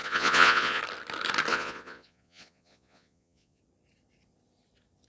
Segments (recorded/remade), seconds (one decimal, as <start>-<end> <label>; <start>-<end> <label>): 0.0-0.8 remade; 0.8-1.5 recorded; 1.5-3.6 remade; 3.6-5.1 recorded